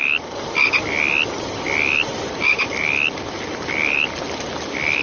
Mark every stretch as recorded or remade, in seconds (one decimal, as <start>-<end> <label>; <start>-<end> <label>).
0.0-2.1 recorded; 2.1-2.8 remade; 2.8-5.0 recorded

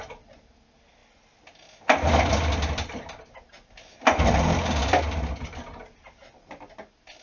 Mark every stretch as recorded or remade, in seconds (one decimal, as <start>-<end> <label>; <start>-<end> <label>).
0.0-7.2 recorded

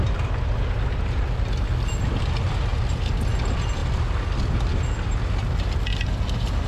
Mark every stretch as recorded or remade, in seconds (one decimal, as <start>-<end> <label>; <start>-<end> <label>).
0.0-6.7 recorded

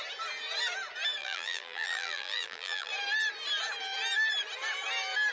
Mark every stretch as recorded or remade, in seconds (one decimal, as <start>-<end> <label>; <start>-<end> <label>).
0.0-1.2 recorded; 1.2-2.9 remade; 2.9-5.3 recorded

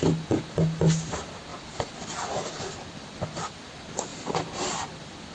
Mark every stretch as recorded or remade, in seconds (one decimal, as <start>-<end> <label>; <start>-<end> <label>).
0.0-1.5 recorded; 1.5-3.6 remade; 3.6-5.3 recorded